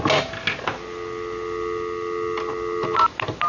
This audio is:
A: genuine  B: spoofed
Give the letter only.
A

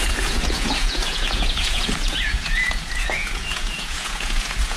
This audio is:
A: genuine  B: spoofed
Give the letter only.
B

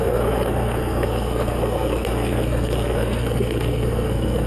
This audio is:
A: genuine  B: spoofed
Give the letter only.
B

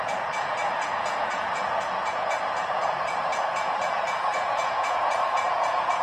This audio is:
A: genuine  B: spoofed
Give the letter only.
B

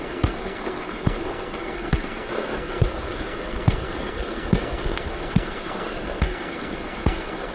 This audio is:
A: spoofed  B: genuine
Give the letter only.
A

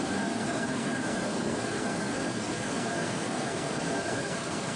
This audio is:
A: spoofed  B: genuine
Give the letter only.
A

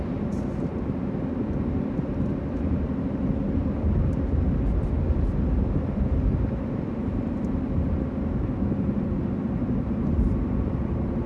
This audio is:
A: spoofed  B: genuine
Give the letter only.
B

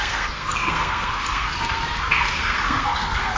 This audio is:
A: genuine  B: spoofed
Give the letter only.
B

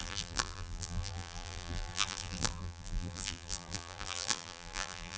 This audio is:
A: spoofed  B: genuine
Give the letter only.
A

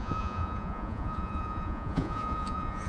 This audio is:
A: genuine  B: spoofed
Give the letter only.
B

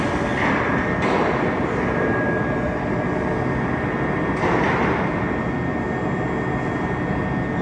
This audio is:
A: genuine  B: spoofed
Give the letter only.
A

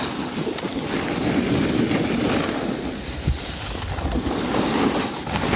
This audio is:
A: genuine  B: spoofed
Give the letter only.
A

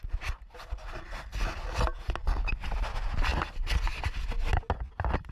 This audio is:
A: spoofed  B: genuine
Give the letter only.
B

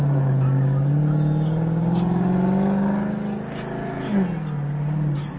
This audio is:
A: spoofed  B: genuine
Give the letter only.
B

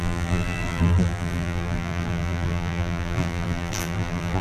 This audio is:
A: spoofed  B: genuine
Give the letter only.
A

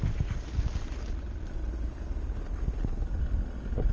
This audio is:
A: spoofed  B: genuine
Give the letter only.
B